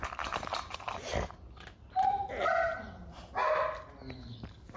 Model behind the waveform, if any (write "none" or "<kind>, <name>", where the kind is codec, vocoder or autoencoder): none